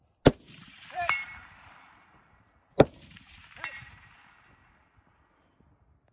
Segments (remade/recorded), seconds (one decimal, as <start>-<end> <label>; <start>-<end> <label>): 0.0-0.6 recorded; 0.6-4.3 remade; 4.3-6.1 recorded